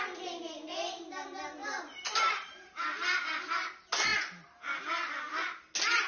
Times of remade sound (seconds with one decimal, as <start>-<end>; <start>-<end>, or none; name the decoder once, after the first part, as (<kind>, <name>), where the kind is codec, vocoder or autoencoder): 1.6-2.8 (vocoder, BigVGAN v2)